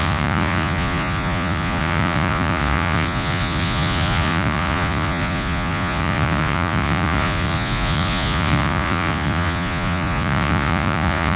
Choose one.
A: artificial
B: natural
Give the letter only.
A